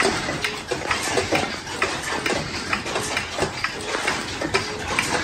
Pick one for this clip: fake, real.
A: real